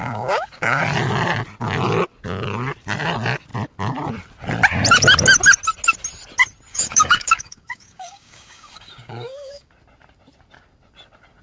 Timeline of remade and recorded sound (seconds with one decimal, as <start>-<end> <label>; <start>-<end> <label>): 0.0-0.8 remade; 0.8-6.7 recorded; 6.7-9.7 remade; 9.7-11.4 recorded